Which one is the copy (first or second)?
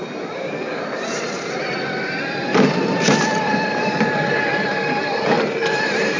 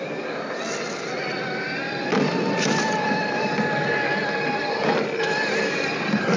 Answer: first